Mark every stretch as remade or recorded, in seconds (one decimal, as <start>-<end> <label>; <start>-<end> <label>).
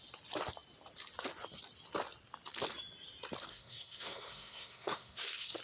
0.0-3.5 recorded; 3.5-5.6 remade